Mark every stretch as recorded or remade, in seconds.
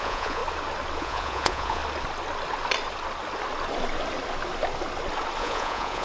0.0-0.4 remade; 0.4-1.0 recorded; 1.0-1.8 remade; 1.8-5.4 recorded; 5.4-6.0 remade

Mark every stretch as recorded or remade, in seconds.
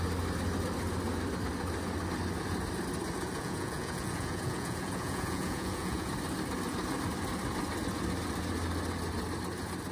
0.0-3.3 recorded; 3.3-6.1 remade; 6.1-9.9 recorded